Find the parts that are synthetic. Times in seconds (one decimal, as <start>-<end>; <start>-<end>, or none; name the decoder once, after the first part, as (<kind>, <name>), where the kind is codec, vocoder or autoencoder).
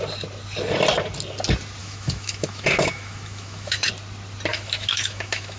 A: 1.8-3.9 (autoencoder, DAC-VAE); 4.5-5.6